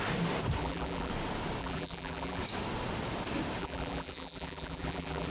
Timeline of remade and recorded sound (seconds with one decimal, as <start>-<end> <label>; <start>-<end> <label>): 0.0-0.6 recorded; 0.6-1.1 remade; 1.1-1.6 recorded; 1.6-2.4 remade; 2.4-3.6 recorded; 3.6-5.3 remade